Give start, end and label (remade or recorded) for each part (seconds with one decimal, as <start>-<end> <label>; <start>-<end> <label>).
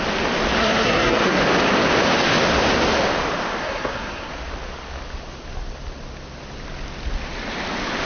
0.0-0.6 recorded; 0.6-1.4 remade; 1.4-3.6 recorded; 3.6-4.3 remade; 4.3-8.1 recorded